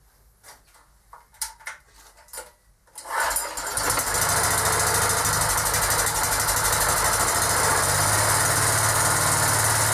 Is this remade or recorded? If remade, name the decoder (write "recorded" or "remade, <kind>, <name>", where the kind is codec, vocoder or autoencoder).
recorded